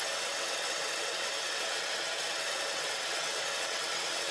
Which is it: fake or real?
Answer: fake